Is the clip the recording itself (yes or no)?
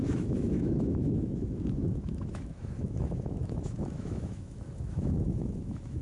no